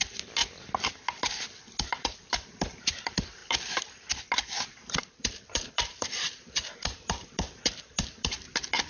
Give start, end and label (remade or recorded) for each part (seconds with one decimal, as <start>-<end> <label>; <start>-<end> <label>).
0.0-0.4 remade; 0.4-1.9 recorded; 1.9-8.9 remade